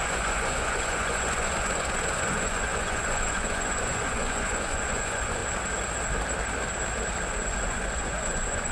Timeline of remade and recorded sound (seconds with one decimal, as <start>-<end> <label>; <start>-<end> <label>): 0.0-5.4 remade; 5.4-7.3 recorded; 7.3-8.7 remade